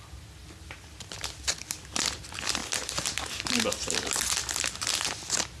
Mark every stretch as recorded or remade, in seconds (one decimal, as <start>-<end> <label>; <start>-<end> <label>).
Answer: 0.0-5.6 recorded